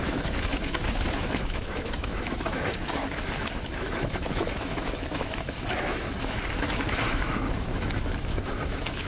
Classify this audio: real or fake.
fake